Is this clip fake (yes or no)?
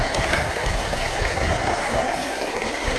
yes